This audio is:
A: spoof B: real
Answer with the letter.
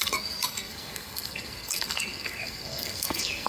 A